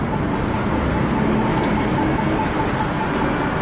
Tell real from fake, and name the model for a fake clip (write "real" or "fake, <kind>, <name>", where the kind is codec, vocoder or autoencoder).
real